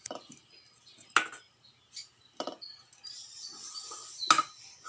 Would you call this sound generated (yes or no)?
no